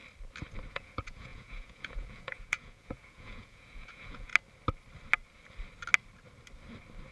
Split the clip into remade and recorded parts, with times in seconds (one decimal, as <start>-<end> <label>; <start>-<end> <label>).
0.0-0.7 recorded; 0.7-4.3 remade; 4.3-7.1 recorded